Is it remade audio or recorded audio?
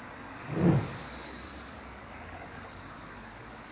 remade